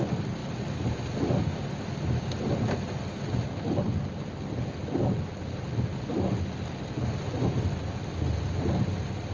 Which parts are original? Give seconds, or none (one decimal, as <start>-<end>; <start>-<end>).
0.0-9.3